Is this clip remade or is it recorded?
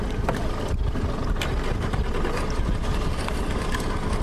recorded